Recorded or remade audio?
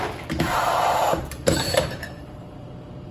remade